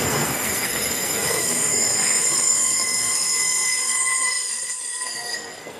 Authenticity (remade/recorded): remade